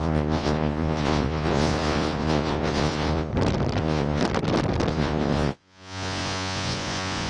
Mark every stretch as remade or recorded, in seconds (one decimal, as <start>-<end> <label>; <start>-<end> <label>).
0.0-3.3 remade; 3.3-3.8 recorded; 3.8-4.2 remade; 4.2-4.9 recorded; 4.9-7.3 remade